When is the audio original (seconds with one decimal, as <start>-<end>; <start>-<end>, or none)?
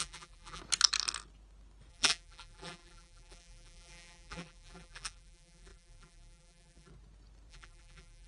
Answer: 0.6-1.9; 6.9-7.5